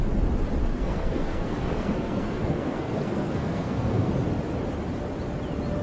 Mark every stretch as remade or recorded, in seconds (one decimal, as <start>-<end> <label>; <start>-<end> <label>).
0.0-0.6 recorded; 0.6-4.1 remade; 4.1-5.8 recorded